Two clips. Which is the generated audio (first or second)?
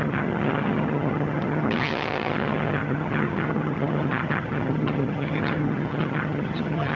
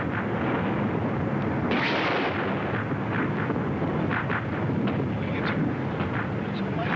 first